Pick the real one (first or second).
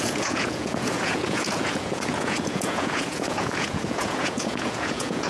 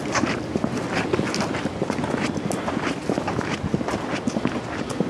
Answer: second